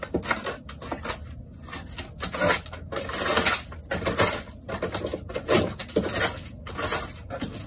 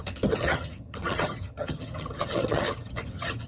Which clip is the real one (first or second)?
first